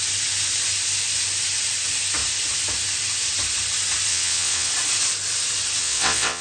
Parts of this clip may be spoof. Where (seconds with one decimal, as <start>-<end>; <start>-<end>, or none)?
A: 4.1-4.7; 5.8-6.4